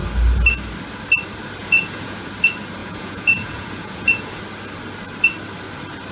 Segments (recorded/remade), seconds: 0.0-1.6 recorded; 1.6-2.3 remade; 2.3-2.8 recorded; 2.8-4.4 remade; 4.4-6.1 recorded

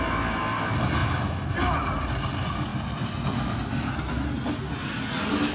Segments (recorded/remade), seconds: 0.0-5.5 recorded

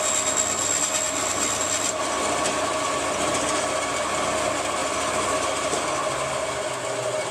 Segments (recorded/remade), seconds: 0.0-7.3 recorded

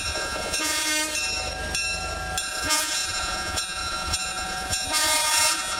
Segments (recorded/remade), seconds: 0.0-0.9 remade; 0.9-2.4 recorded; 2.4-5.8 remade

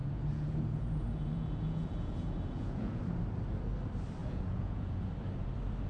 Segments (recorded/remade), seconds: 0.0-3.0 remade; 3.0-4.2 recorded; 4.2-5.1 remade; 5.1-5.9 recorded

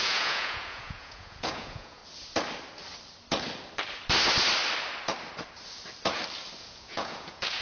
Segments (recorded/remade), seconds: 0.0-2.0 remade; 2.0-6.6 recorded; 6.6-7.6 remade

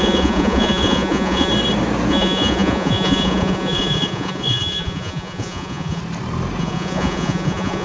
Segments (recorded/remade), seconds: 0.0-1.5 remade; 1.5-2.1 recorded; 2.1-6.0 remade; 6.0-6.6 recorded; 6.6-7.8 remade

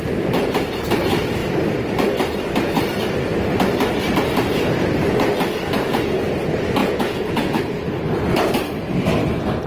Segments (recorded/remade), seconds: 0.0-6.8 recorded; 6.8-7.6 remade; 7.6-9.7 recorded